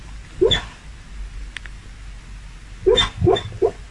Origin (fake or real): real